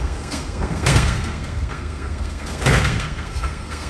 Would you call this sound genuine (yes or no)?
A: no